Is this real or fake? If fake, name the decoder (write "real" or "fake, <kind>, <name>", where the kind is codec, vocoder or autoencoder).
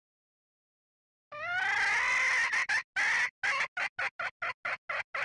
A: real